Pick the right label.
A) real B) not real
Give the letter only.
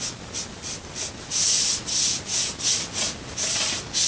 A